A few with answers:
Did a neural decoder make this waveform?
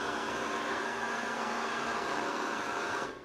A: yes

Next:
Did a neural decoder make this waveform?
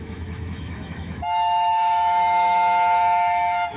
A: yes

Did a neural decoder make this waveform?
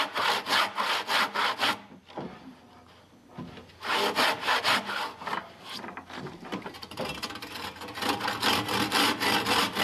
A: no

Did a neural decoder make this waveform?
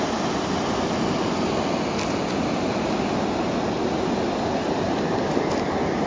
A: no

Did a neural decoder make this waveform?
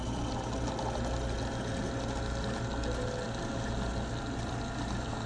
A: no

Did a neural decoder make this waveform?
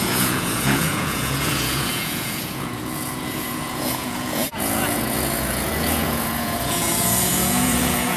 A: yes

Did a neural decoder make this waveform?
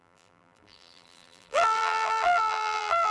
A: yes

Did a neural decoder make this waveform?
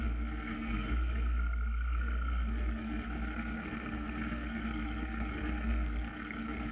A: yes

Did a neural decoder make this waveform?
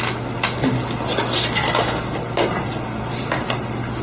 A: no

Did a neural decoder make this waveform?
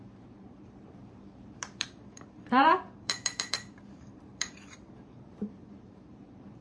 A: yes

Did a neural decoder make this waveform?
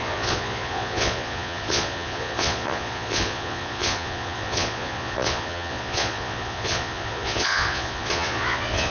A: yes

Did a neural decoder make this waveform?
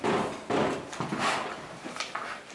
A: no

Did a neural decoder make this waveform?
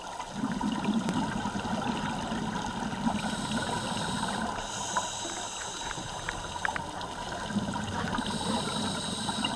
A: no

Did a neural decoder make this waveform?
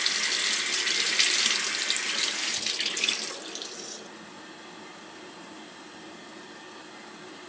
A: no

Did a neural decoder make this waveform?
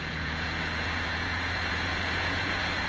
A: yes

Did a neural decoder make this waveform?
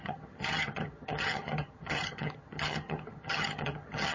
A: yes